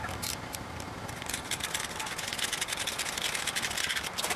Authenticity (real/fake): real